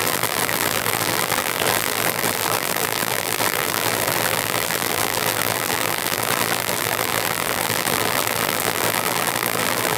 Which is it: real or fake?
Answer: fake